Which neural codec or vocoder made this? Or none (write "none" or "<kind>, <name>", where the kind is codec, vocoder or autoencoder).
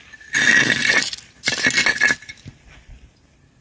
none